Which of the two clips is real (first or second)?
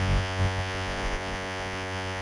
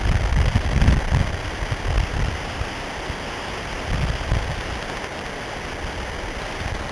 second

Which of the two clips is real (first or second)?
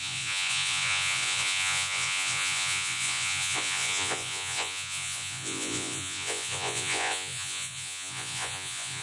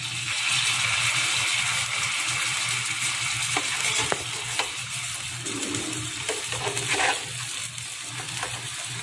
second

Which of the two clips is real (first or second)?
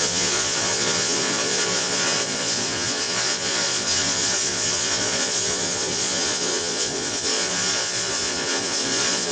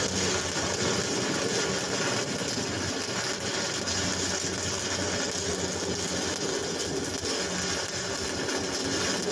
second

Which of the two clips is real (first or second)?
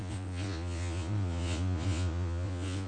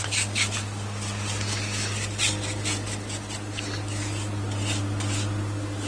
second